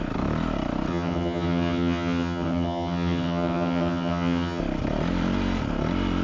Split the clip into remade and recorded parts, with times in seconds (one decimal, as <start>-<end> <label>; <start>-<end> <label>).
0.0-0.9 recorded; 0.9-4.6 remade; 4.6-6.2 recorded